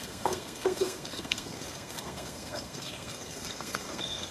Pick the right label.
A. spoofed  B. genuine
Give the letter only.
A